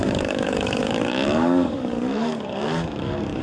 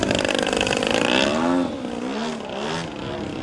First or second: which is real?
second